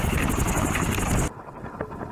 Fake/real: real